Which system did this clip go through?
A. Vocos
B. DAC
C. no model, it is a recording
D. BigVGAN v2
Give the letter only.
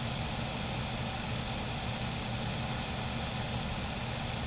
C